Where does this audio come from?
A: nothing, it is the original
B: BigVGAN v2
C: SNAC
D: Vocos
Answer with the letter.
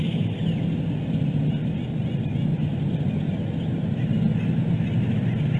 A